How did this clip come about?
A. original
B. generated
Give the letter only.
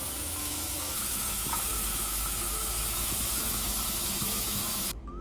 B